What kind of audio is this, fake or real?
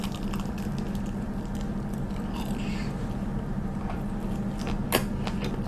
real